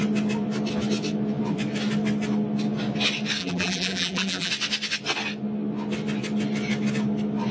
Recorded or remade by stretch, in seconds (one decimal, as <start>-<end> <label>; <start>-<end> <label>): 0.0-3.4 recorded; 3.4-4.5 remade; 4.5-7.5 recorded